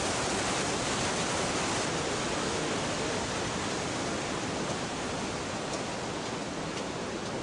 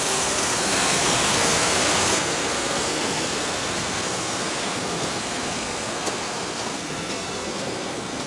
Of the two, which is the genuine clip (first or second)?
first